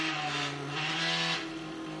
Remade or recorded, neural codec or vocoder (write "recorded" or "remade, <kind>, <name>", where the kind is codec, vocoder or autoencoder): recorded